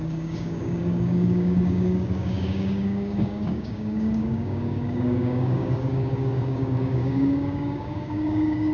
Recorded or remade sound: remade